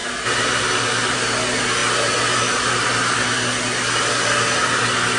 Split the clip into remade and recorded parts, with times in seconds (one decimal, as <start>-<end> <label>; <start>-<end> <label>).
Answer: 0.0-5.2 recorded